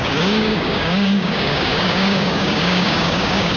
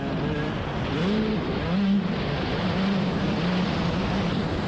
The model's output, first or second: first